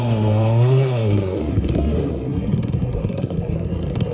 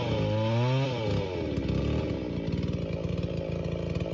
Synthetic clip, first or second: first